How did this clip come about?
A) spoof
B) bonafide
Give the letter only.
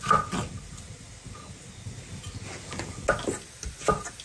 B